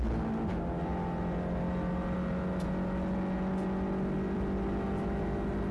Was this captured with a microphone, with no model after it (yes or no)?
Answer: yes